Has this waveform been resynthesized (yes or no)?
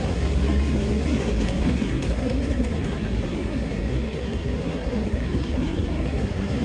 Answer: yes